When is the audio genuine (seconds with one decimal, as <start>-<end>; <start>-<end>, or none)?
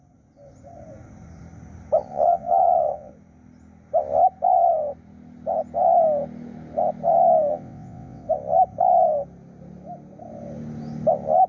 0.0-2.1; 3.1-7.5; 8.3-11.5